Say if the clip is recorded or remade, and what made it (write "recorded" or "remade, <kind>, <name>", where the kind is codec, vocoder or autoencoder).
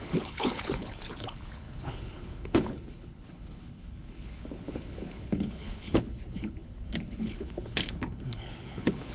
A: remade, codec, HILCodec